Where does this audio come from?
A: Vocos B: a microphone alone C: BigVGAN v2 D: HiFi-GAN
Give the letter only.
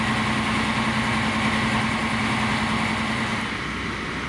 B